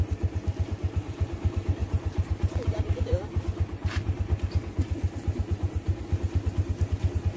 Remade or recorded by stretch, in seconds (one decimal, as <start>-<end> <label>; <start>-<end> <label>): 0.0-1.8 recorded; 1.8-2.9 remade; 2.9-7.4 recorded

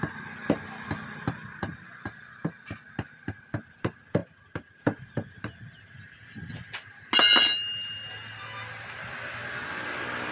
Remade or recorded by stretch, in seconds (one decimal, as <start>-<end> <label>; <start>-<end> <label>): 0.0-10.3 recorded

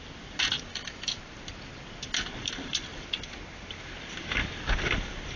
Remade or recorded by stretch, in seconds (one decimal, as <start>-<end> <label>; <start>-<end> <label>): 0.0-0.7 recorded; 0.7-1.2 remade; 1.2-5.4 recorded

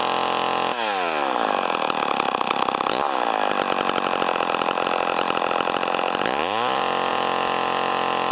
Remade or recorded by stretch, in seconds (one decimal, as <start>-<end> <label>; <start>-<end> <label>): 0.0-8.3 recorded

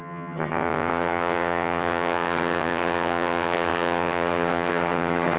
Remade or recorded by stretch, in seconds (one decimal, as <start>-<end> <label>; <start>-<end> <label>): 0.0-5.4 remade

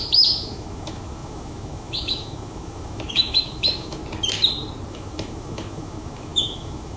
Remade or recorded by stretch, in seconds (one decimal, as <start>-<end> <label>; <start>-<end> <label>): 0.0-4.0 remade; 4.0-4.9 recorded; 4.9-7.0 remade